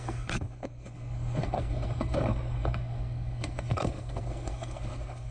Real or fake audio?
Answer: fake